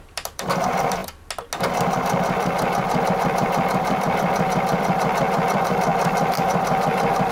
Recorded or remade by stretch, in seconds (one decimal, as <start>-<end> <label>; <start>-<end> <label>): 0.0-1.0 remade; 1.0-3.1 recorded; 3.1-7.3 remade